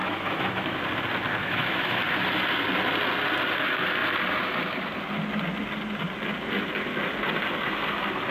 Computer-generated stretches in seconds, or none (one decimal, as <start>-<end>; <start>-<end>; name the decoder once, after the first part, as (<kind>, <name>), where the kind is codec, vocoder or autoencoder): 0.0-0.8 (autoencoder, DAC-VAE); 1.4-2.0